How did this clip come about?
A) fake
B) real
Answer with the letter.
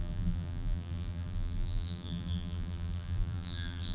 A